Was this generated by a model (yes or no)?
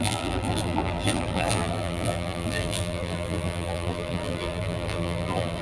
yes